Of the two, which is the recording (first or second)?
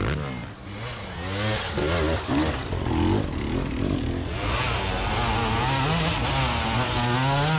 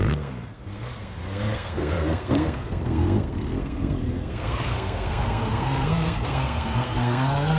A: first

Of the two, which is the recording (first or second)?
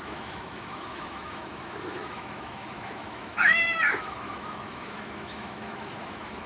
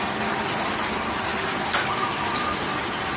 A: second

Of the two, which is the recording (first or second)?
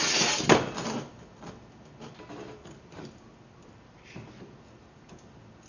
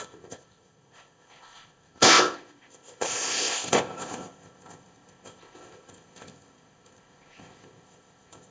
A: first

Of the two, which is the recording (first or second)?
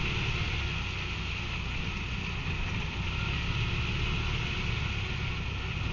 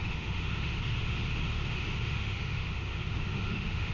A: first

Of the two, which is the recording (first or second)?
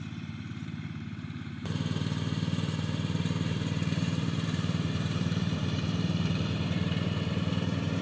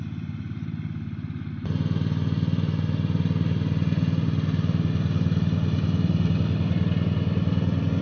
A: second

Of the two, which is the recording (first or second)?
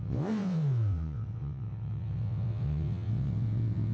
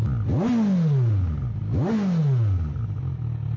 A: second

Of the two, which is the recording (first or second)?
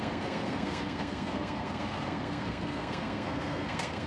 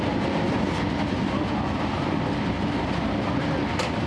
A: second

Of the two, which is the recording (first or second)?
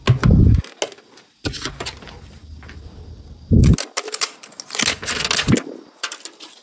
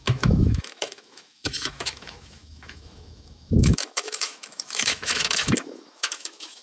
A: first